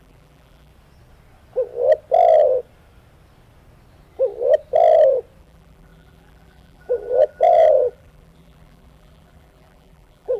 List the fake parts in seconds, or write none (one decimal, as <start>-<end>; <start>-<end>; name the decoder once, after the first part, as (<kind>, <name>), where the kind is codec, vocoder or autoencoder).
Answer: 0.0-0.7 (vocoder, BigVGAN v2); 5.4-10.4